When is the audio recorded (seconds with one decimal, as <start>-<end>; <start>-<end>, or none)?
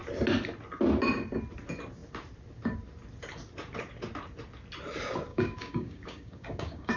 0.0-5.3